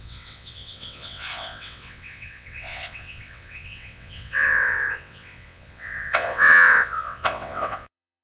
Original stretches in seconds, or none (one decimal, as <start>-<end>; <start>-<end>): none

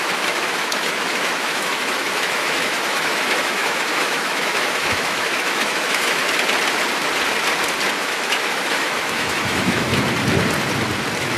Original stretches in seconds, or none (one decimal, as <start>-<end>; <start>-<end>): 6.2-8.0; 9.9-11.4

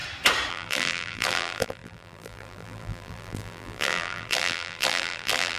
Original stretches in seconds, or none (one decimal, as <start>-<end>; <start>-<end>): 0.0-0.5

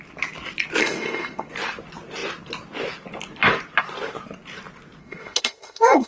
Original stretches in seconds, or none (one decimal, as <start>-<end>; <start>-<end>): 0.0-0.8; 1.5-5.0

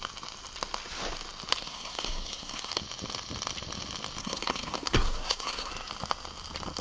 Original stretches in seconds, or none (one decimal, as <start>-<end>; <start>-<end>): 0.0-1.6; 2.8-4.2; 5.7-6.8

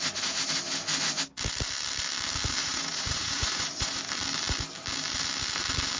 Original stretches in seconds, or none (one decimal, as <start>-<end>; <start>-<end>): 0.0-2.6; 4.0-6.0